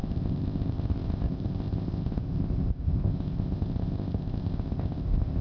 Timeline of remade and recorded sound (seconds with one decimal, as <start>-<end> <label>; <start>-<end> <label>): 0.0-5.4 remade

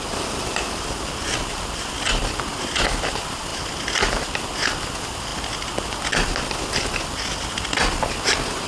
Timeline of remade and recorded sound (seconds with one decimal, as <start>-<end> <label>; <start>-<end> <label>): 0.0-8.7 recorded

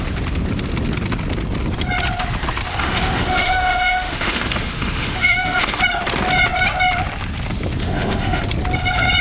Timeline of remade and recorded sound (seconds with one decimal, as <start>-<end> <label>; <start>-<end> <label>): 0.0-2.7 recorded; 2.7-5.8 remade; 5.8-7.8 recorded; 7.8-8.4 remade; 8.4-9.2 recorded

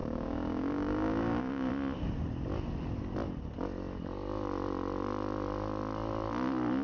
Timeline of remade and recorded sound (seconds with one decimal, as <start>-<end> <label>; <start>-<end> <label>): 0.0-1.7 remade; 1.7-6.8 recorded

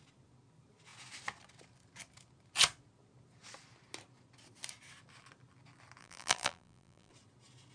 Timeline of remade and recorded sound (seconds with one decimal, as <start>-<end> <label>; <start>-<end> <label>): 0.0-6.0 recorded; 6.0-7.1 remade; 7.1-7.7 recorded

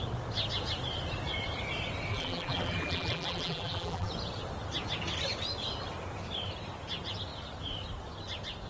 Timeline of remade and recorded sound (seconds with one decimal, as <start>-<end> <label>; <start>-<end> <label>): 0.0-2.1 recorded; 2.1-4.1 remade; 4.1-8.7 recorded